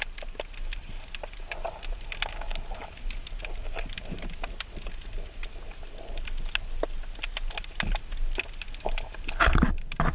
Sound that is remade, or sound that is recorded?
recorded